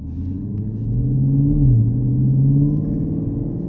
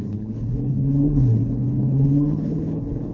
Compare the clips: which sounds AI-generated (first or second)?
second